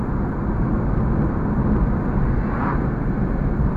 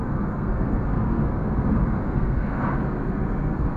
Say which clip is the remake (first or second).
second